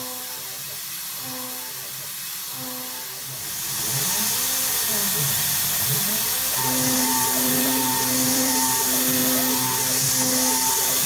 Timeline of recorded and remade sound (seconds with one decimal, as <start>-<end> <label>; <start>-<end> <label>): 0.0-5.0 recorded; 5.0-8.5 remade; 8.5-11.1 recorded